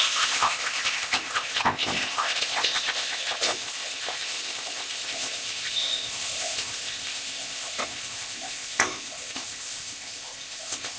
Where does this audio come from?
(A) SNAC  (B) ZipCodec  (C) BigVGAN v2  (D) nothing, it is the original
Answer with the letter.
B